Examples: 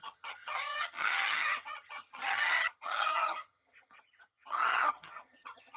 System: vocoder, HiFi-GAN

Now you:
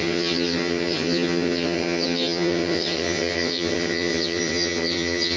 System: vocoder, HiFi-GAN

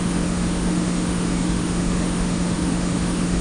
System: autoencoder, DAC-VAE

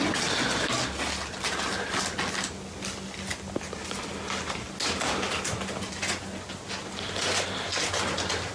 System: none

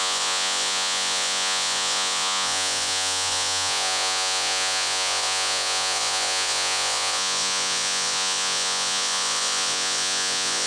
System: vocoder, Vocos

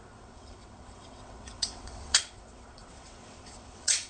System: vocoder, WaveNeXt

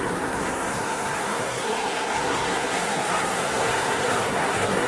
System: codec, SNAC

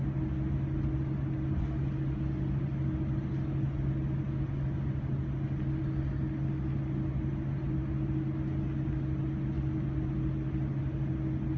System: none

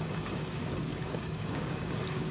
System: codec, DAC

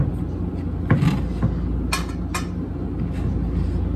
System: none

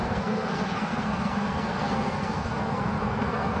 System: codec, SNAC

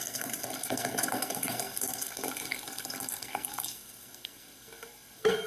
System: codec, SNAC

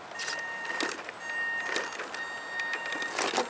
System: none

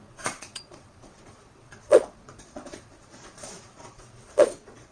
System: vocoder, Vocos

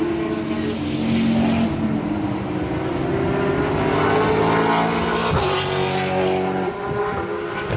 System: none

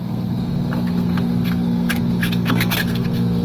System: codec, SNAC